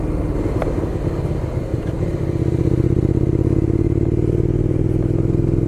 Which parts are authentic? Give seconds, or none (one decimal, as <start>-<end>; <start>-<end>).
0.0-5.7